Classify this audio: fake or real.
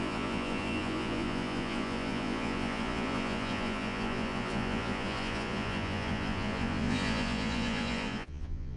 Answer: fake